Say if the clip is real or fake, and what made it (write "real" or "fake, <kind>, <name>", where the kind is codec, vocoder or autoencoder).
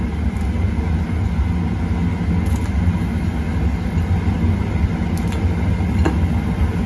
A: real